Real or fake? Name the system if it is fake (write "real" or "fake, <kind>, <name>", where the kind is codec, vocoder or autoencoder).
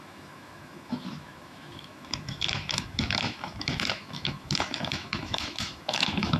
fake, autoencoder, DAC-VAE